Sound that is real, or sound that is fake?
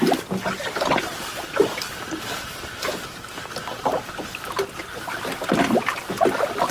real